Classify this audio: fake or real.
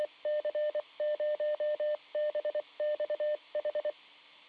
real